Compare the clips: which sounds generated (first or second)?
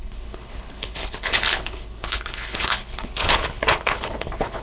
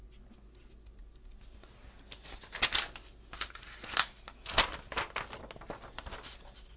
first